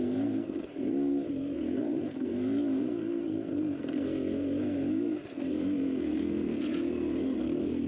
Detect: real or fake fake